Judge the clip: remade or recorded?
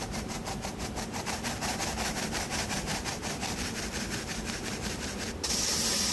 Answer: remade